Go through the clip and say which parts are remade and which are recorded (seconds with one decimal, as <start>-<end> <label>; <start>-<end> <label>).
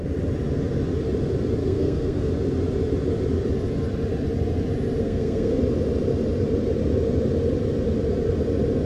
0.0-1.6 recorded; 1.6-2.3 remade; 2.3-5.0 recorded; 5.0-5.6 remade; 5.6-8.9 recorded